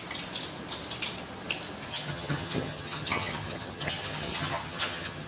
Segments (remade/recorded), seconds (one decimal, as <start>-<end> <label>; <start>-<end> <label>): 0.0-1.9 recorded; 1.9-5.3 remade